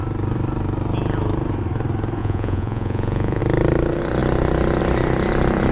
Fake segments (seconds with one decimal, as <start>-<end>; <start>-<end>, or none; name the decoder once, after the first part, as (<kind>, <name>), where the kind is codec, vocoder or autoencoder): 2.2-3.4 (vocoder, Vocos)